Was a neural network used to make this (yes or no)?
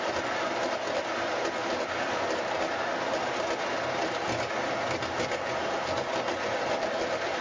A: no